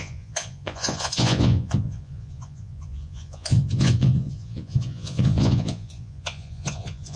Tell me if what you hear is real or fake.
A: fake